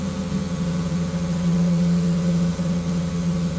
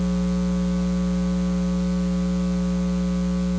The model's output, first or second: first